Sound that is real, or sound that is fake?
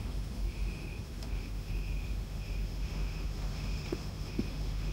fake